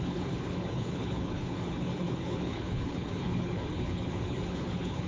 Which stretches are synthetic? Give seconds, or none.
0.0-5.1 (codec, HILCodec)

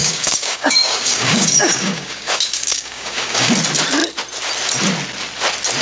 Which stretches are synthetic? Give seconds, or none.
0.0-3.5 (codec, DAC)

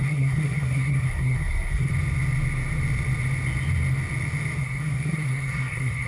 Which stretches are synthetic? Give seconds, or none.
0.0-1.9 (codec, SNAC); 4.6-6.1

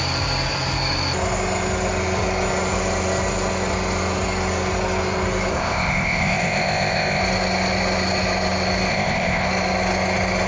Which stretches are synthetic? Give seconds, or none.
5.5-7.2 (codec, ZipCodec); 8.9-9.5

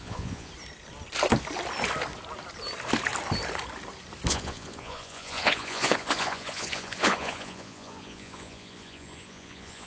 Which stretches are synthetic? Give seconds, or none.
0.0-0.5 (vocoder, Vocos); 4.3-9.9

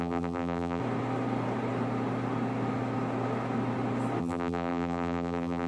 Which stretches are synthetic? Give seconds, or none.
0.0-0.8 (vocoder, BigVGAN v2); 4.2-5.7